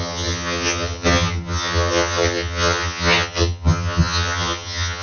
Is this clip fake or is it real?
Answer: fake